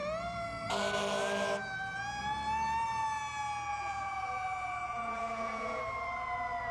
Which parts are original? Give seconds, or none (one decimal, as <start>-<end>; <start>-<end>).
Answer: 0.0-3.7; 5.8-6.7